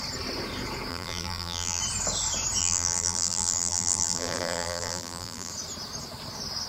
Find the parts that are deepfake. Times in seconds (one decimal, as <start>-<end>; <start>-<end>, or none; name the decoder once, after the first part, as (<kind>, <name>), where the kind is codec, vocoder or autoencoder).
0.9-1.8 (vocoder, BigVGAN v2); 2.6-5.5